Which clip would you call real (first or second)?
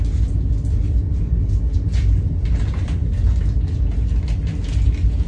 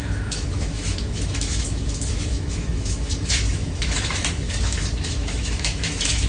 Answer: first